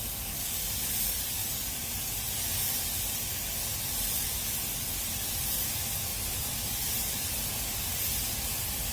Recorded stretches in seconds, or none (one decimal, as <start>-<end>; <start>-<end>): 0.0-6.1; 7.7-8.9